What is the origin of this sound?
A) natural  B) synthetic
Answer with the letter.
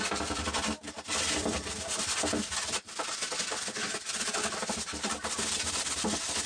B